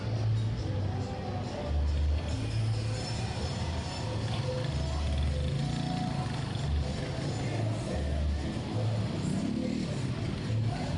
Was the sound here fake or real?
real